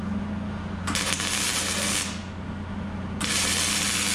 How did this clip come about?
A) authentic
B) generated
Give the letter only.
A